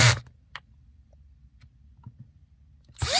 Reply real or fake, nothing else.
real